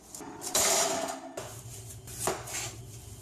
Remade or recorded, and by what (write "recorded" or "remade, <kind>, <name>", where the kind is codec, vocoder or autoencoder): recorded